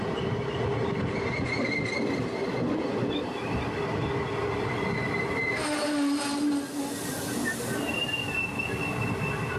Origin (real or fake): real